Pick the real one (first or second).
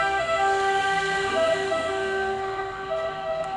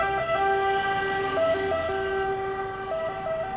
second